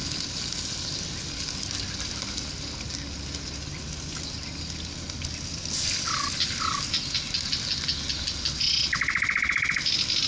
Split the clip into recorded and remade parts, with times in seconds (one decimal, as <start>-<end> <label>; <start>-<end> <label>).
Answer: 0.0-10.3 recorded